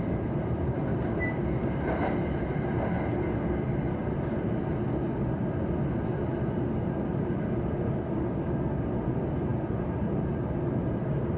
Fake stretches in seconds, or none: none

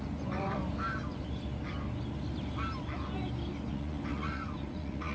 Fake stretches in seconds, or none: 0.0-0.6; 3.7-5.1

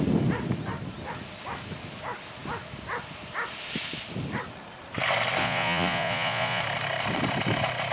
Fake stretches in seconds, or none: 5.4-6.6

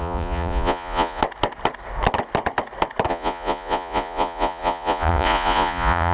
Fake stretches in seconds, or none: 0.0-1.2; 3.1-6.1